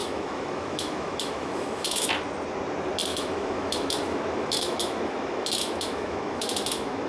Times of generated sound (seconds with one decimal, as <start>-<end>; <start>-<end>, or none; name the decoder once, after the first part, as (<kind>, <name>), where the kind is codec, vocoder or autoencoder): 0.0-2.1 (autoencoder, DAC-VAE); 3.1-7.1